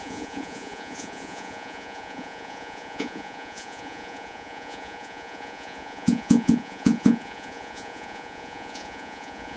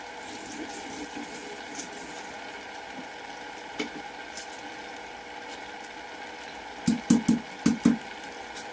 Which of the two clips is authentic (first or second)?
second